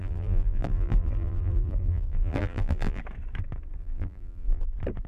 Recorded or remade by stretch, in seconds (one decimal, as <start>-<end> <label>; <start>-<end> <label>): 0.0-3.0 remade; 3.0-3.8 recorded; 3.8-4.6 remade; 4.6-5.1 recorded